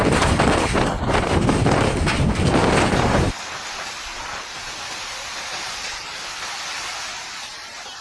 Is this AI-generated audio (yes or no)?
yes